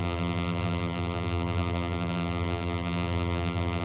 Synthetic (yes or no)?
yes